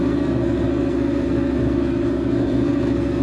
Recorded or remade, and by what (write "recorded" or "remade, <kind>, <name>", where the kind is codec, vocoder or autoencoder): remade, codec, SNAC